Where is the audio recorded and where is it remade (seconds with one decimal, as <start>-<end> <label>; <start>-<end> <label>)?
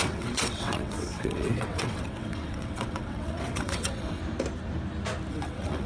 0.0-4.2 remade; 4.2-5.3 recorded; 5.3-5.9 remade